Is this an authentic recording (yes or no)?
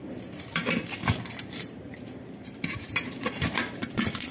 no